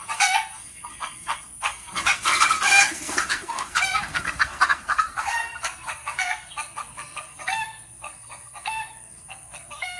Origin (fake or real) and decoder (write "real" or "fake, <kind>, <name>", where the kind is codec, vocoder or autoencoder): fake, codec, SNAC